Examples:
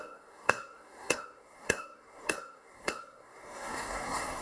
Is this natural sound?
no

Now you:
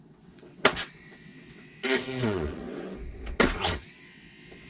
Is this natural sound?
no